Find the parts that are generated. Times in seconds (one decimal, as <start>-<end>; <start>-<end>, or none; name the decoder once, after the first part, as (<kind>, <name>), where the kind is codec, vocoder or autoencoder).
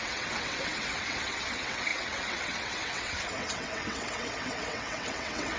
0.0-5.6 (vocoder, WaveNeXt)